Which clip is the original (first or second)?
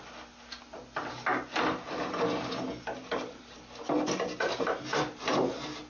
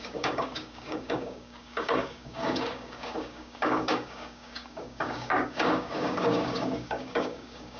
first